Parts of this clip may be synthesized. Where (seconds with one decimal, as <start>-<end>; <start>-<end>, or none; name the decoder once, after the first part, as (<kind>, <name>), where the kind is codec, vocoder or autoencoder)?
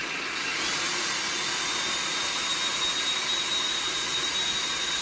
none